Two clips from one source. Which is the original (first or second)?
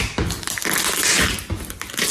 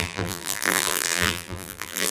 first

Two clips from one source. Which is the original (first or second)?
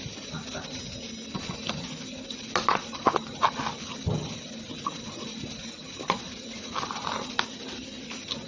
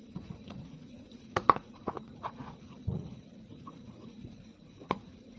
first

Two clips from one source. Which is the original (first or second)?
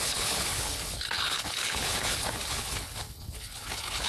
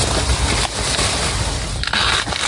second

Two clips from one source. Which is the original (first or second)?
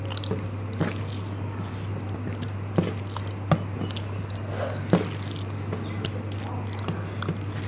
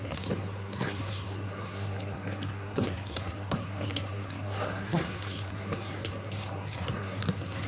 first